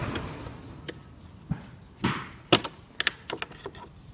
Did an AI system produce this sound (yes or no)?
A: no